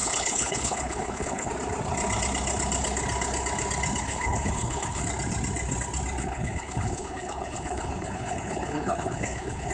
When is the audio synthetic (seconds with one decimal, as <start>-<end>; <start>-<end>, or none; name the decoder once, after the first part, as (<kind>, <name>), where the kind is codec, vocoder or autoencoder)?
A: 0.0-1.5 (codec, HILCodec); 4.0-5.0; 6.2-9.7